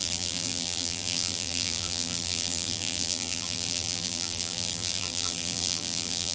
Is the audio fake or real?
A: fake